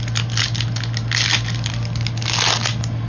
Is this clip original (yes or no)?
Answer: yes